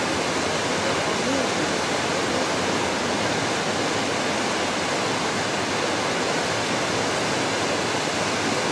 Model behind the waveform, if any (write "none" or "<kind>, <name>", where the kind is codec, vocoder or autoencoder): none